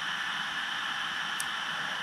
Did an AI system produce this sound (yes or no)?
no